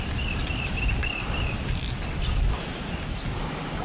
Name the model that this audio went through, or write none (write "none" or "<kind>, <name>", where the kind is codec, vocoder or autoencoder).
none